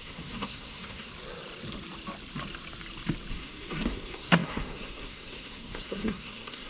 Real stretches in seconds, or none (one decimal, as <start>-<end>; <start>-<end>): 1.1-3.3